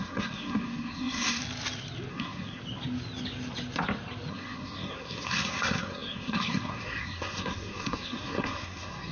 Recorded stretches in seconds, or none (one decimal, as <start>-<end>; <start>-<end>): 1.4-2.1; 2.6-4.3